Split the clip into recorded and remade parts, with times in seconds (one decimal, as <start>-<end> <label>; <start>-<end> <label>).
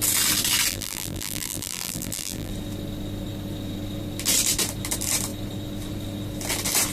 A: 0.0-0.7 recorded; 0.7-2.5 remade; 2.5-6.9 recorded